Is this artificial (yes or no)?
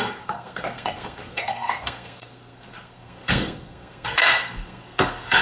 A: yes